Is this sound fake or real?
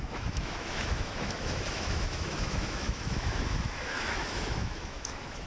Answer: fake